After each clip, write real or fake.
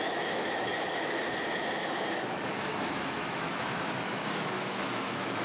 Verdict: fake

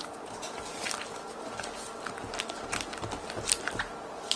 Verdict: real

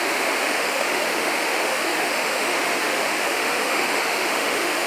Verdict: fake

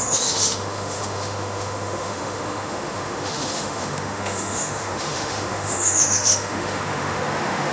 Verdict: fake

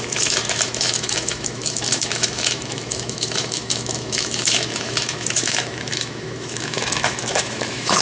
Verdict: fake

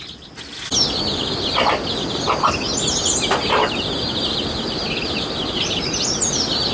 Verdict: real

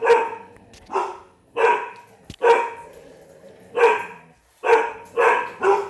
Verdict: real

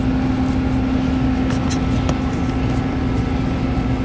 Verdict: real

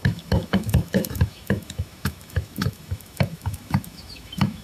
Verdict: fake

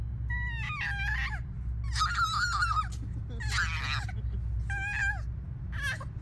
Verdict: real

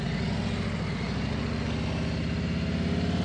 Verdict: real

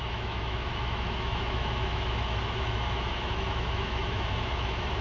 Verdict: fake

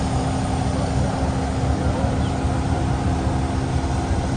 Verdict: real